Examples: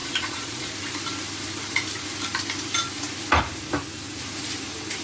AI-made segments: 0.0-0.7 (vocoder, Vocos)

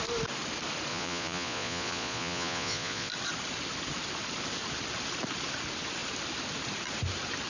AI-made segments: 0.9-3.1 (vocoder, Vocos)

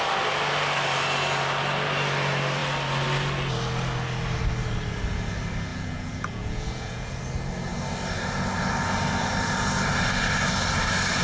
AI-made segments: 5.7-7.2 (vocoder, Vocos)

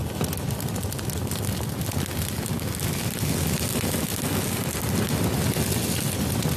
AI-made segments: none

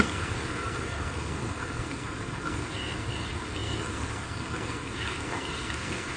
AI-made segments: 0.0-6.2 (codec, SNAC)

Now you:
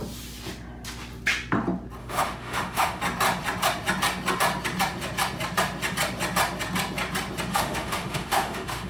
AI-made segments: 2.0-3.0 (autoencoder, DAC-VAE); 7.5-8.9

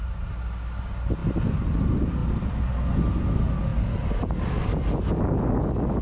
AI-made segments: none